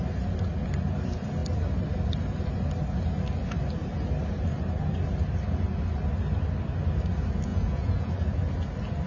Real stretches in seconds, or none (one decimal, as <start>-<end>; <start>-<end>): 0.0-7.5; 8.1-9.1